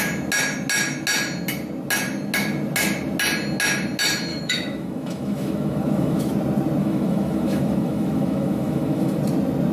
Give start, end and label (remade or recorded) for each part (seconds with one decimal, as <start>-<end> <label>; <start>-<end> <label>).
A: 0.0-4.3 recorded; 4.3-6.3 remade; 6.3-6.8 recorded; 6.8-9.2 remade; 9.2-9.7 recorded